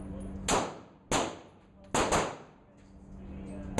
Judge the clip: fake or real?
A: real